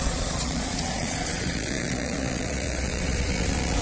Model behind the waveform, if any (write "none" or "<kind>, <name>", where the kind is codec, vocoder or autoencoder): vocoder, Vocos